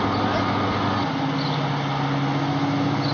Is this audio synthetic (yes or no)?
no